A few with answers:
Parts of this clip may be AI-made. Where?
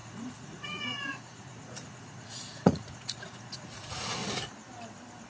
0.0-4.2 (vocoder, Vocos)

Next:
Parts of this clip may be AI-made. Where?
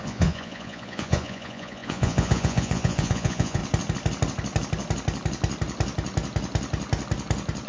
0.0-3.6 (vocoder, Vocos)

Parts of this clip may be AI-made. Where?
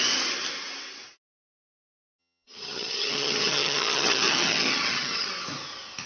2.2-5.3 (vocoder, HiFi-GAN)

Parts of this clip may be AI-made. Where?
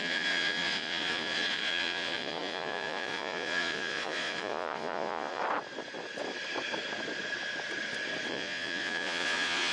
0.0-5.4 (vocoder, Vocos); 8.3-9.7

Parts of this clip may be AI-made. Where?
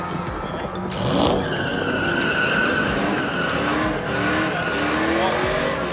none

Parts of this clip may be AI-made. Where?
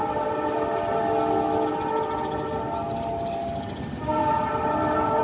4.2-5.2 (vocoder, BigVGAN v2)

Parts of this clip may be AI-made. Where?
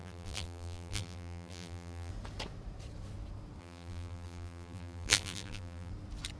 0.0-2.1 (vocoder, BigVGAN v2); 3.6-5.9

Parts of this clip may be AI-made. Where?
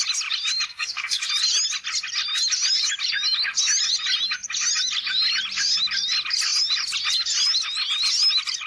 0.7-1.2 (codec, SNAC)